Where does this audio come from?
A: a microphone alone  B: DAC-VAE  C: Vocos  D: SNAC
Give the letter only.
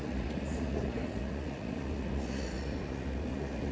C